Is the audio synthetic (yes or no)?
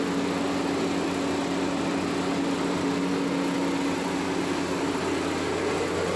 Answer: no